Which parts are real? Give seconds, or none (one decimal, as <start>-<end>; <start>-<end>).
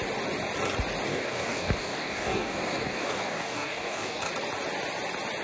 0.0-1.1; 4.3-5.4